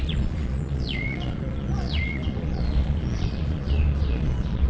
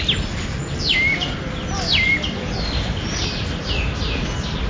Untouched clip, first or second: second